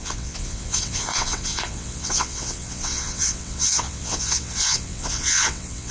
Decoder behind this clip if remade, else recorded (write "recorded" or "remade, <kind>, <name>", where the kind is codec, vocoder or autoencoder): remade, vocoder, WaveNeXt